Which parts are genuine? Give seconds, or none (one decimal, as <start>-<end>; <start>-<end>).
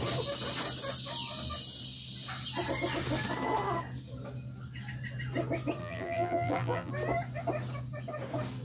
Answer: 0.0-5.8; 6.9-8.6